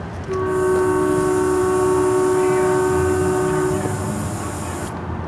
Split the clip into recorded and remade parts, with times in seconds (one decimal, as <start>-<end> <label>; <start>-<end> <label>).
0.0-5.3 recorded